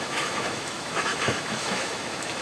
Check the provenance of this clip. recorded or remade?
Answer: remade